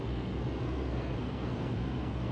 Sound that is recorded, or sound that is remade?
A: remade